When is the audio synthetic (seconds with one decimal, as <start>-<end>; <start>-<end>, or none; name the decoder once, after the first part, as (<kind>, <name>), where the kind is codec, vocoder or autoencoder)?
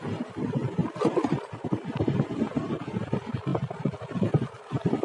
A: none